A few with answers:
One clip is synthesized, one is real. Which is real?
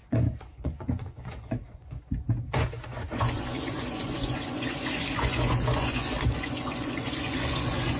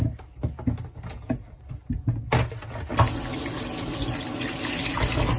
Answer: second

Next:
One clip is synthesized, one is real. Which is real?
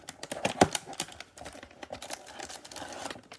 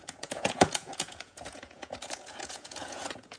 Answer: first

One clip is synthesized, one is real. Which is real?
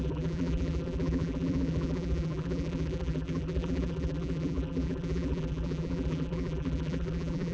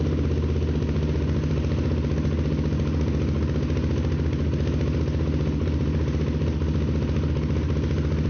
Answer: second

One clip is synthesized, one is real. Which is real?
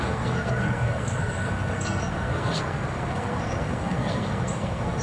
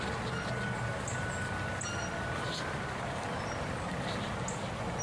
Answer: second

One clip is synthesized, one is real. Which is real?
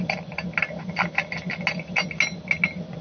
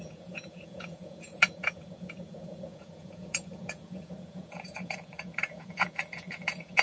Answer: first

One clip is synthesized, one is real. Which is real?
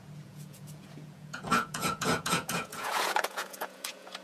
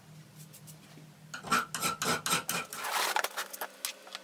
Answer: second